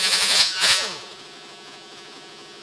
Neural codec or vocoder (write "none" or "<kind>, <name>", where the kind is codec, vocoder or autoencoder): vocoder, Vocos